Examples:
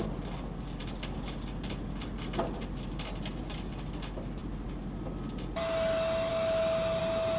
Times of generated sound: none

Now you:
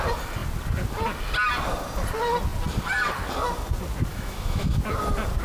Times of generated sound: 4.1-4.8 (autoencoder, DAC-VAE)

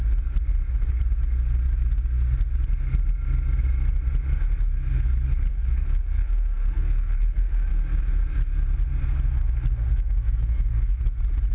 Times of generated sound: 5.5-7.7 (codec, SNAC); 9.9-11.0

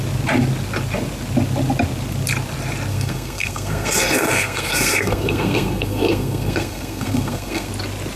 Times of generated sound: 2.9-7.7 (codec, SNAC)

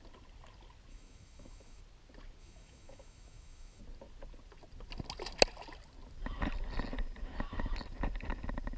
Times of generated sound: 0.9-1.8 (autoencoder, DAC-VAE); 2.4-3.8